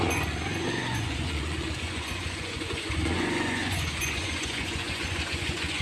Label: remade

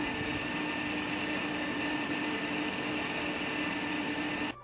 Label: recorded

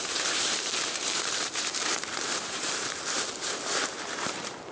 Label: remade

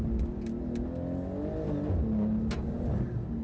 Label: recorded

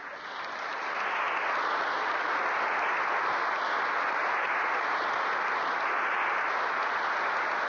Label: recorded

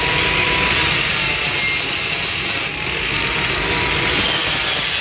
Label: recorded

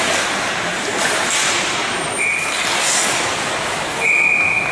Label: recorded